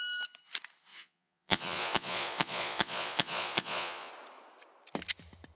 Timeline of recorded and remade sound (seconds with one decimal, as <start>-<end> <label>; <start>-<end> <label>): 0.0-0.9 recorded; 0.9-4.1 remade; 4.1-5.6 recorded